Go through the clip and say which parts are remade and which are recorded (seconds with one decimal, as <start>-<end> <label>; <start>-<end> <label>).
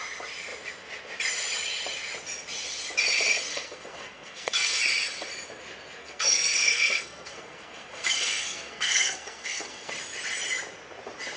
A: 0.0-3.5 recorded; 3.5-4.8 remade; 4.8-6.0 recorded; 6.0-9.9 remade; 9.9-11.4 recorded